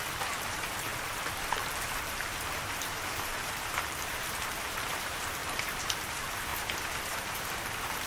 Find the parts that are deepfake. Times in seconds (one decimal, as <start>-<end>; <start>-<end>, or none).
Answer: 0.0-6.5; 7.3-8.1